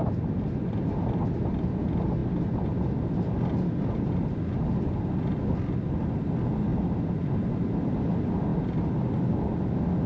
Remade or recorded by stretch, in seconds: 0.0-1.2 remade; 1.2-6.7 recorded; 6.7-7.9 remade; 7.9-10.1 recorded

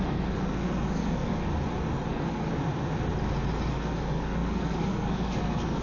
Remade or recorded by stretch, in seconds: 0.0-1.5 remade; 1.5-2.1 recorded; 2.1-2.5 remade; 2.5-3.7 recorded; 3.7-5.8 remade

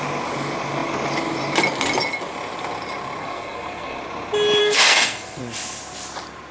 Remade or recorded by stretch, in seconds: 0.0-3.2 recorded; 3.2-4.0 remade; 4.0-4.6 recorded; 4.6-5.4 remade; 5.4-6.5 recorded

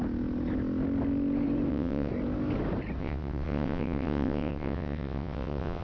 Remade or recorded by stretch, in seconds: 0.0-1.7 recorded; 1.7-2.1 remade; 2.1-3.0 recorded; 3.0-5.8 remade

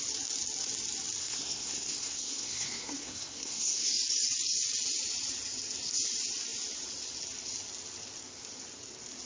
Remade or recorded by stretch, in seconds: 0.0-1.2 recorded; 1.2-3.9 remade; 3.9-9.3 recorded

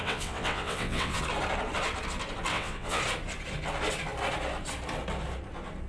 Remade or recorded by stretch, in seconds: 0.0-1.2 remade; 1.2-2.5 recorded; 2.5-3.0 remade; 3.0-5.9 recorded